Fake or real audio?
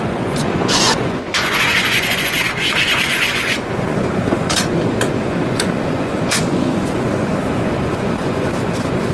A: fake